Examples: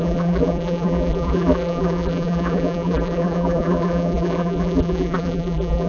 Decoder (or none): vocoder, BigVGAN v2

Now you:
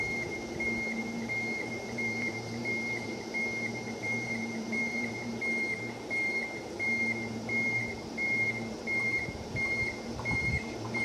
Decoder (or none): vocoder, BigVGAN v2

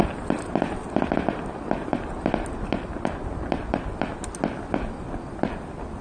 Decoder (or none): none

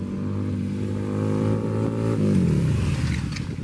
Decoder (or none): none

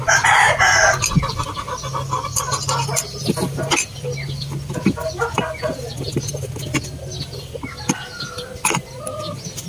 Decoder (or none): none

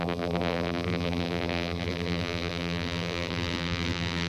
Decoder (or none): vocoder, BigVGAN v2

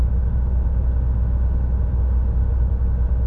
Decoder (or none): none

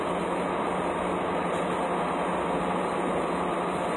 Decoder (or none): none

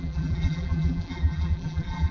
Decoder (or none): vocoder, BigVGAN v2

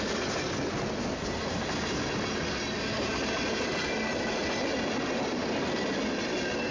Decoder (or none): none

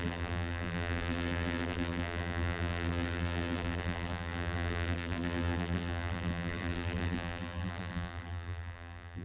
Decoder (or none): vocoder, BigVGAN v2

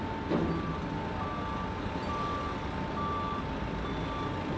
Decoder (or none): none